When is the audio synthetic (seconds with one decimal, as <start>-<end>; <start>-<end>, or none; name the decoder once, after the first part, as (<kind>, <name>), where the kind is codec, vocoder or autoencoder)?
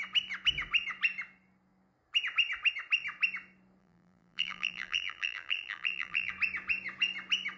3.8-6.3 (vocoder, BigVGAN v2)